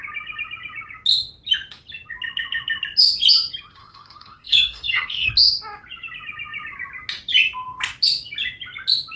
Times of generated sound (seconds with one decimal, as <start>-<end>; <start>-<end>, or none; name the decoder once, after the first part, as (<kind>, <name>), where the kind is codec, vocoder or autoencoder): 3.8-5.3 (codec, SNAC)